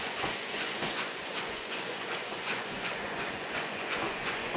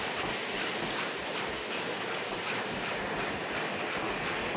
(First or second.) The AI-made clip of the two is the first